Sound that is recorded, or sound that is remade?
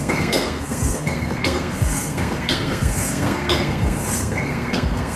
remade